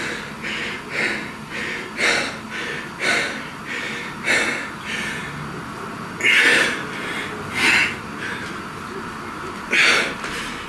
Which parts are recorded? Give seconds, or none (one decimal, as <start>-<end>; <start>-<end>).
0.0-7.8; 8.4-10.7